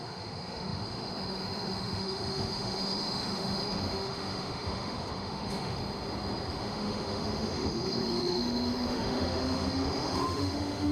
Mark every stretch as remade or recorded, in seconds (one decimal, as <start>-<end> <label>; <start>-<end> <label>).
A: 0.0-5.8 remade; 5.8-6.5 recorded; 6.5-10.9 remade